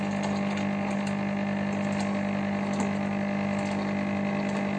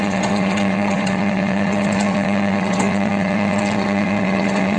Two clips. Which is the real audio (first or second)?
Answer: first